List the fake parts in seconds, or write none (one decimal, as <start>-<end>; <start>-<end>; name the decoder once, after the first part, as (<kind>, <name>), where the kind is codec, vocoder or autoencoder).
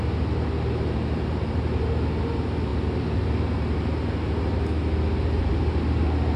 none